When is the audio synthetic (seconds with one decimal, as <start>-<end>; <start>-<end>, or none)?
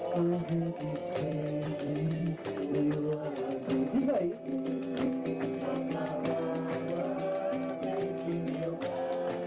1.0-3.3; 4.5-5.1